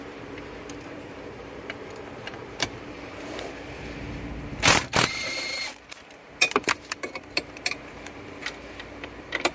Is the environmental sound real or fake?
fake